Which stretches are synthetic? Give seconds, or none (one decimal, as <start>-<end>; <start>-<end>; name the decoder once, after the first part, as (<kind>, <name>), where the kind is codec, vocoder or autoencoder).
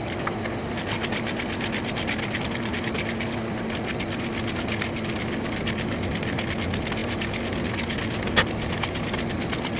none